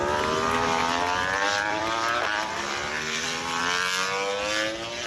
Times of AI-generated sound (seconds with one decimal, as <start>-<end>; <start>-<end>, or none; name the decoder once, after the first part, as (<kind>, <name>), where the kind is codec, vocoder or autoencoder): 0.8-3.6 (vocoder, BigVGAN v2)